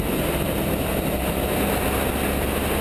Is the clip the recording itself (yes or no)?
yes